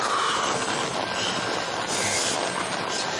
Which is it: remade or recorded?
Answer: recorded